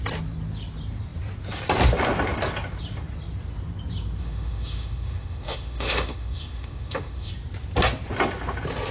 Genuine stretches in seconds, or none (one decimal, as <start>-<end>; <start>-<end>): 0.0-4.2; 7.3-8.9